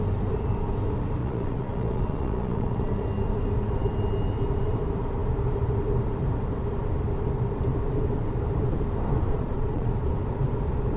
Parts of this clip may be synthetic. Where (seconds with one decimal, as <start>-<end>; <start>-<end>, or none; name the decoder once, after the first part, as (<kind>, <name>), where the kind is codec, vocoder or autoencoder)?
1.2-2.9 (vocoder, Vocos); 9.3-9.9